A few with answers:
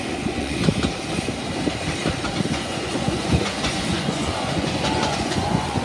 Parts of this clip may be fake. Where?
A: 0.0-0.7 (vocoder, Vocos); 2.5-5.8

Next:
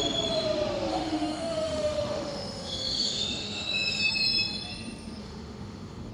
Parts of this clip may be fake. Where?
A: 0.9-4.0 (autoencoder, DAC-VAE); 5.2-6.1

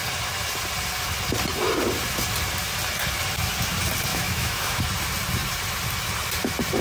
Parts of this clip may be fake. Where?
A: 4.1-4.8 (autoencoder, DAC-VAE)

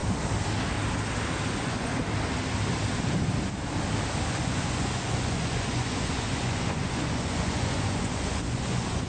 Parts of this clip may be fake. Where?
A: 1.5-1.9 (vocoder, Vocos); 4.3-9.1

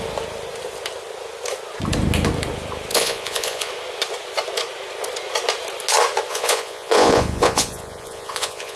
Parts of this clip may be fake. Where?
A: 2.9-3.7 (vocoder, Vocos); 6.3-8.8

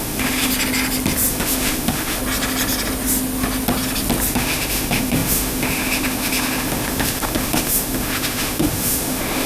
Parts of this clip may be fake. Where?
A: 0.0-0.5 (autoencoder, DAC-VAE); 1.3-2.2; 4.3-9.5

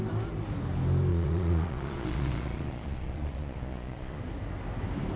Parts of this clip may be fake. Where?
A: 1.1-4.2 (vocoder, Vocos)